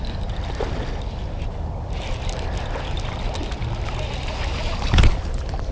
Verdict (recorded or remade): recorded